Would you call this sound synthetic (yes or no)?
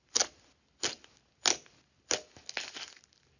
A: no